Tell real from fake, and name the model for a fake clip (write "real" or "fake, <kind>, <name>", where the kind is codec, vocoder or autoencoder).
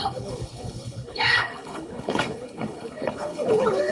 fake, codec, HILCodec